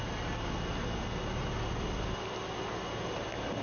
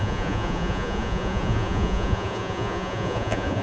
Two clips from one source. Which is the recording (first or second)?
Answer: first